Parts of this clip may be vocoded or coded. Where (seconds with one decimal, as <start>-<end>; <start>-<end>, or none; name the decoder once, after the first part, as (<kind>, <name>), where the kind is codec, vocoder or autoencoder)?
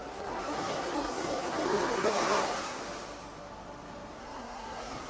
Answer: 0.0-2.8 (codec, SNAC); 4.2-5.1